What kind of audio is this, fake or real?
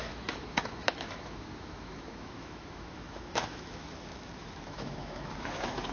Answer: fake